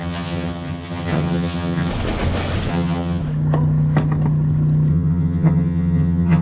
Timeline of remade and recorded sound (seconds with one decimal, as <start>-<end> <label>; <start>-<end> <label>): 0.0-1.9 remade; 1.9-2.7 recorded; 2.7-3.2 remade; 3.2-4.9 recorded; 4.9-6.4 remade